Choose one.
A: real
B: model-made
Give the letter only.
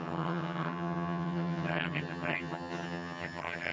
B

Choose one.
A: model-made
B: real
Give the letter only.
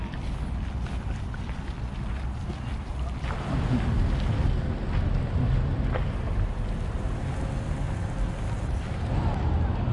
B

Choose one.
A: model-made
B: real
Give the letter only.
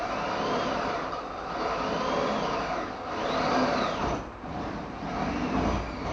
B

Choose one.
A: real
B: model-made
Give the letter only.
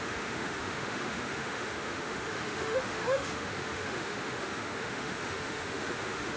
B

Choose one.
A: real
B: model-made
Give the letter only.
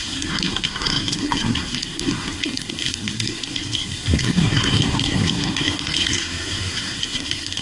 B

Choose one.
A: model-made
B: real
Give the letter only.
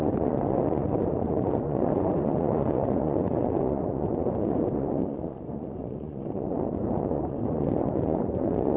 A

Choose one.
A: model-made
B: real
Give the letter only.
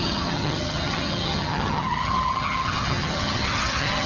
A